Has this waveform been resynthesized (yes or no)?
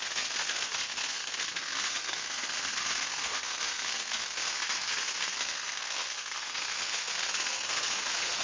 yes